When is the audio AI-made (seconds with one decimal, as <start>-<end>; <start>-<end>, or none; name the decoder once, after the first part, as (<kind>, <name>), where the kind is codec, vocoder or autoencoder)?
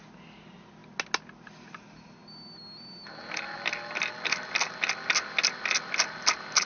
none